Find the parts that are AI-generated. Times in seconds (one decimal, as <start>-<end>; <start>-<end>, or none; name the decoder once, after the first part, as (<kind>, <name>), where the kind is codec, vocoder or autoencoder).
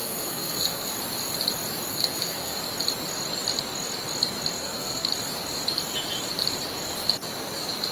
0.0-0.9 (codec, SNAC); 1.9-2.6; 4.6-5.1